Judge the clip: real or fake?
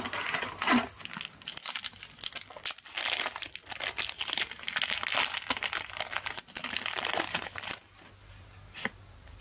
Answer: real